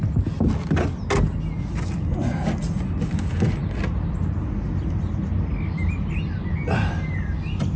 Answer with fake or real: real